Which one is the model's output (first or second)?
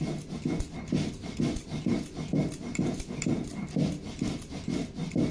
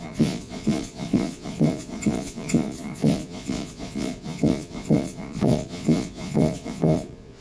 second